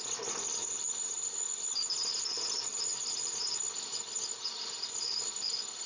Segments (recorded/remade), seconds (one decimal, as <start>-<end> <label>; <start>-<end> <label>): 0.0-5.9 recorded